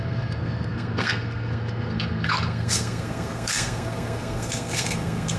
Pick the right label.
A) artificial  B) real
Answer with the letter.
A